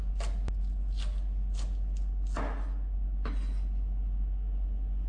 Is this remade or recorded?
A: recorded